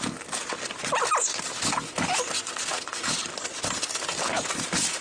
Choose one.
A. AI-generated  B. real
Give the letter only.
A